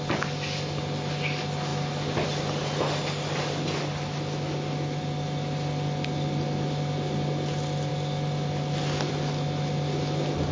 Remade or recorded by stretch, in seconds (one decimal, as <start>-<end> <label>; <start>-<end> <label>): 0.0-10.5 recorded